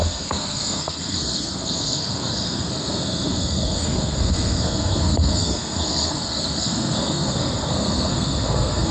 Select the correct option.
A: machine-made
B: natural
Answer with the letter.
A